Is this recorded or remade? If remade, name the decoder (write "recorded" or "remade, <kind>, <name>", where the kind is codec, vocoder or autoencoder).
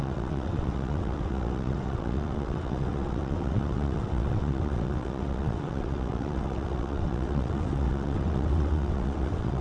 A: remade, vocoder, WaveNeXt